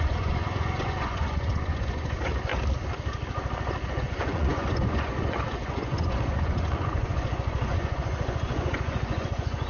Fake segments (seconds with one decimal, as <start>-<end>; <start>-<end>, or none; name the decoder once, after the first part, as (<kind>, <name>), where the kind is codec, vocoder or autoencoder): 0.0-2.5 (vocoder, Vocos); 3.9-9.7